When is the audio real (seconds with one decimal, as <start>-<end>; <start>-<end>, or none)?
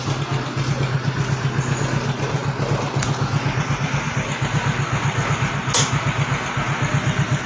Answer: 0.0-7.5